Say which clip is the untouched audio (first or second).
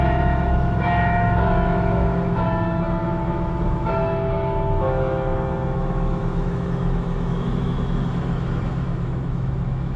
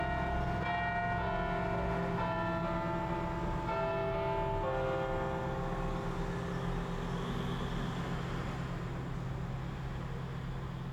second